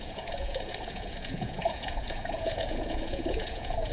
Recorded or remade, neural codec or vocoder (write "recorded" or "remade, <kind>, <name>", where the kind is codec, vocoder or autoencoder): remade, vocoder, Vocos